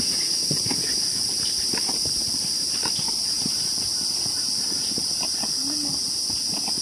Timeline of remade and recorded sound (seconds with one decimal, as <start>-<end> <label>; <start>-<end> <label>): 0.0-1.1 recorded; 1.1-5.2 remade; 5.2-6.8 recorded